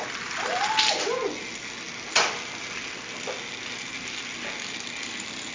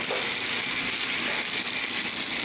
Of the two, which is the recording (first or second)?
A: first